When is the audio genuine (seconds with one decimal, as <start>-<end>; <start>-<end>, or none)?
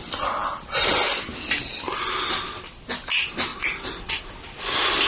0.0-3.5; 4.2-5.1